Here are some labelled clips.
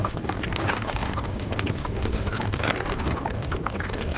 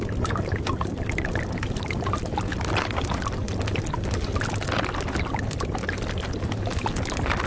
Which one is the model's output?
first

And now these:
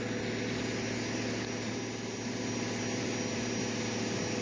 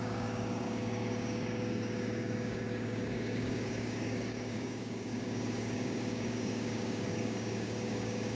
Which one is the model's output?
second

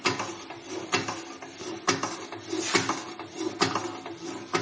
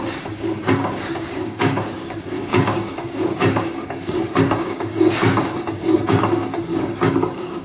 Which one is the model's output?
second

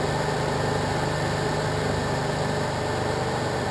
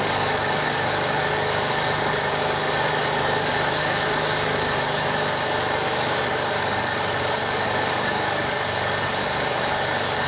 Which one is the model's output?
second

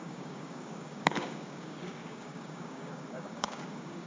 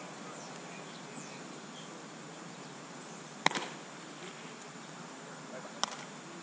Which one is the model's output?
first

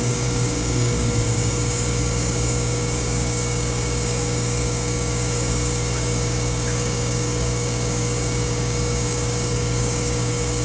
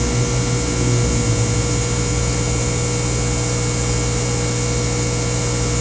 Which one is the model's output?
first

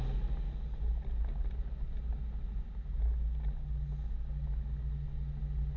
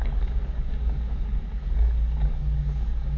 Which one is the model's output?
second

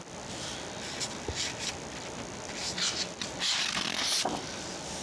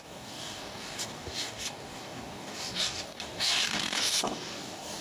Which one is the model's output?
second